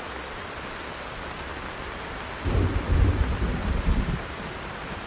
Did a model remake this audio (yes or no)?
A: no